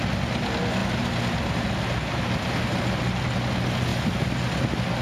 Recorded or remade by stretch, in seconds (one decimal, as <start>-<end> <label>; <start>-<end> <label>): 0.0-5.0 recorded